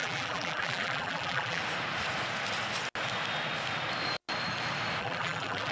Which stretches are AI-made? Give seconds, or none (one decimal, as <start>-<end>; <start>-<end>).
0.0-1.6; 5.0-5.7

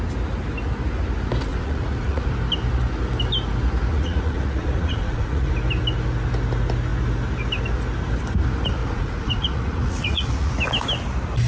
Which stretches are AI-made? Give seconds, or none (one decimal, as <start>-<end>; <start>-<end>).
1.5-2.3; 3.9-5.5; 8.8-10.5